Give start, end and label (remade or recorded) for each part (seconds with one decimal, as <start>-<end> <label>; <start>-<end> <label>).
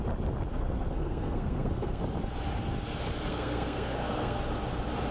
0.0-0.5 recorded; 0.5-2.0 remade; 2.0-3.3 recorded; 3.3-4.4 remade; 4.4-5.1 recorded